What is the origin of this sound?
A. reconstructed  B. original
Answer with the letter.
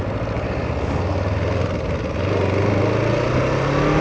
B